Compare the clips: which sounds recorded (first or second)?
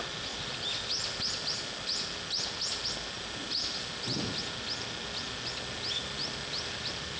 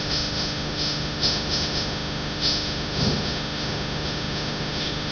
first